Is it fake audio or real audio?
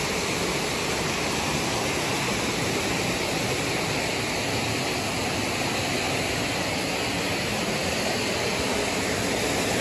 real